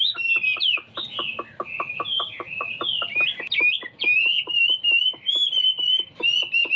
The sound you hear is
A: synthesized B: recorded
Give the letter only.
B